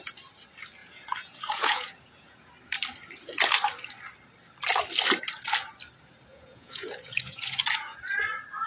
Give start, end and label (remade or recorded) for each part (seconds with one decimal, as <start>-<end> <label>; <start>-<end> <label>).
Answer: 0.0-0.8 recorded; 0.8-2.5 remade; 2.5-6.3 recorded; 6.3-7.6 remade; 7.6-8.7 recorded

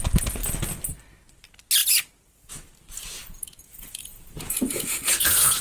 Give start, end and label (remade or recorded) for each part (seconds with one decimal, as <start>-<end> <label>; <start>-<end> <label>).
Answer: 0.0-3.2 recorded; 3.2-5.6 remade

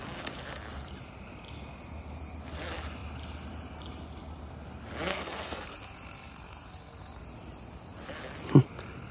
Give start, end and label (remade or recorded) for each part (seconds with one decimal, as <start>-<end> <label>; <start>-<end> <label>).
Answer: 0.0-5.1 recorded; 5.1-7.2 remade; 7.2-9.1 recorded

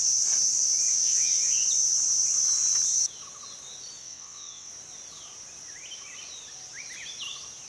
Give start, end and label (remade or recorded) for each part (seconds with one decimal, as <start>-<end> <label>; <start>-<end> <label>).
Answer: 0.0-0.9 recorded; 0.9-1.7 remade; 1.7-4.0 recorded; 4.0-4.7 remade; 4.7-7.7 recorded